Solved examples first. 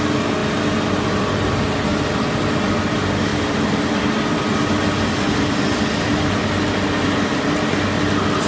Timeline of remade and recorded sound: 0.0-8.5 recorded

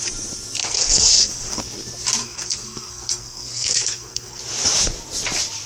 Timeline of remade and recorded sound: 0.0-0.6 recorded; 0.6-1.6 remade; 1.6-2.2 recorded; 2.2-4.4 remade; 4.4-5.7 recorded

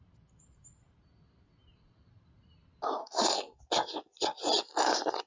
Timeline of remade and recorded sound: 0.0-3.0 recorded; 3.0-3.6 remade; 3.6-5.3 recorded

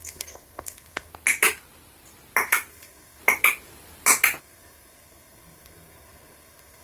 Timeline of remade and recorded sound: 0.0-1.1 remade; 1.1-2.7 recorded; 2.7-3.2 remade; 3.2-4.4 recorded; 4.4-6.8 remade

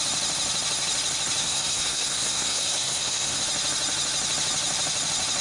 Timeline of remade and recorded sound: 0.0-1.4 recorded; 1.4-3.4 remade; 3.4-5.4 recorded

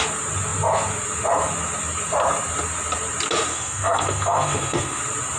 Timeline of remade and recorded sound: 0.0-3.5 recorded; 3.5-5.0 remade; 5.0-5.4 recorded

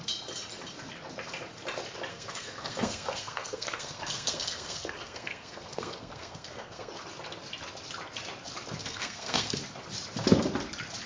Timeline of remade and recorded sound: 0.0-2.1 recorded; 2.1-6.9 remade; 6.9-8.8 recorded; 8.8-9.6 remade; 9.6-11.1 recorded

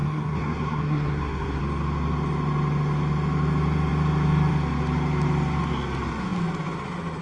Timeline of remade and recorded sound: 0.0-1.6 remade; 1.6-7.2 recorded